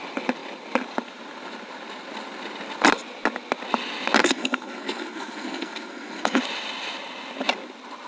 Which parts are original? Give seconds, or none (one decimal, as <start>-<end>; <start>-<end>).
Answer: 0.0-4.2; 6.4-8.1